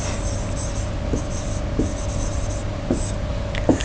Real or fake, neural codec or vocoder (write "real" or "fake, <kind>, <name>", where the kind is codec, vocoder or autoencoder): real